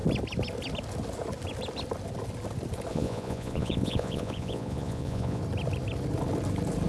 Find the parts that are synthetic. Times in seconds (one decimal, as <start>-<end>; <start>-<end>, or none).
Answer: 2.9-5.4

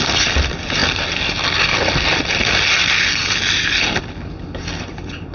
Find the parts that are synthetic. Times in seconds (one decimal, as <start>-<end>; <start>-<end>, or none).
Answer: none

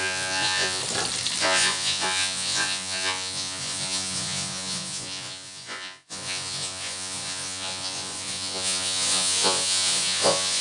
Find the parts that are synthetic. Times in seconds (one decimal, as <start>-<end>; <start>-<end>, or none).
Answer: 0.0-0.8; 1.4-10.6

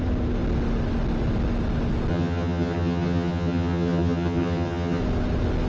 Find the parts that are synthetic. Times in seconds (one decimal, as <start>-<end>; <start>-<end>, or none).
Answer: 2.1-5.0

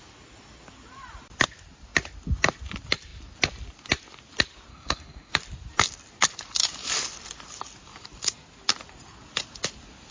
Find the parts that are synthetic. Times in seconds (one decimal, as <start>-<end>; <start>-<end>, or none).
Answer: 4.7-5.3

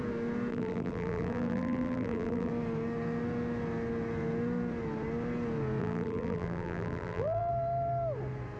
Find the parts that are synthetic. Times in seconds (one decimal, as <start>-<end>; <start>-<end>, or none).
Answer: 0.5-2.5; 5.8-7.5